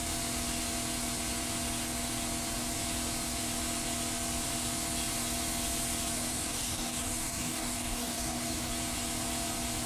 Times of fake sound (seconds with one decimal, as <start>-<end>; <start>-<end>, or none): 6.3-8.7